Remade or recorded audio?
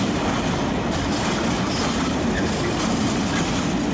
recorded